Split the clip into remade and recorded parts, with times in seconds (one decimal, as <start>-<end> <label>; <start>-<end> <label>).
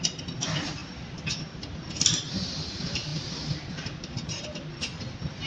0.0-5.5 recorded